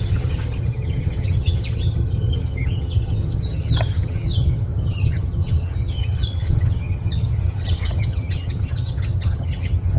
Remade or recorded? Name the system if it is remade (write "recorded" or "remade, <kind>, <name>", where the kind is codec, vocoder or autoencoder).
remade, vocoder, HiFi-GAN